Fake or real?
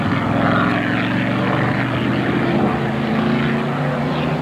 real